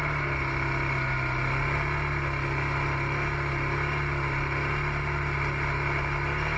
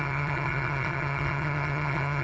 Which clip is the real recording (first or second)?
first